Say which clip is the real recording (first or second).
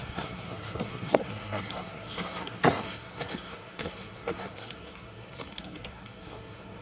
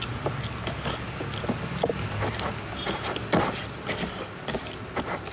second